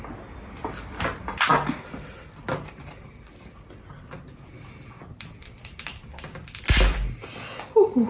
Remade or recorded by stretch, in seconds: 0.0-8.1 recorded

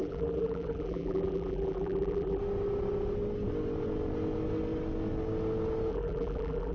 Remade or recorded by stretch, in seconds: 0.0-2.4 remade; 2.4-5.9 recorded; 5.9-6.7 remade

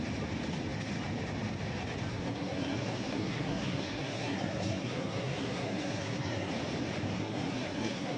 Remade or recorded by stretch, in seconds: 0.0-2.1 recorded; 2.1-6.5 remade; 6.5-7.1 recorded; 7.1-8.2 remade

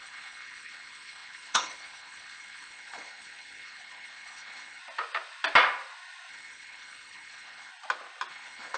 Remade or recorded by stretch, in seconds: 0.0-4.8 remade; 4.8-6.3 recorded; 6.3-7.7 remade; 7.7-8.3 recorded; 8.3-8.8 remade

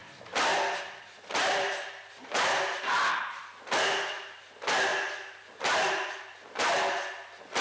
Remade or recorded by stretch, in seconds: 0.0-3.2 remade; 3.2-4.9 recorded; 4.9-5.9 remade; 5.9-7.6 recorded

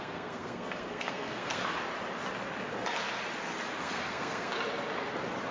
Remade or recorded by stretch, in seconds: 0.0-1.6 remade; 1.6-3.8 recorded; 3.8-4.5 remade; 4.5-5.5 recorded